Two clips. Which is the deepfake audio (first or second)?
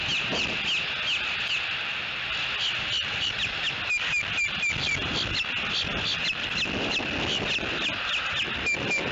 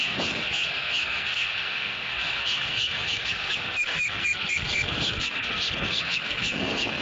second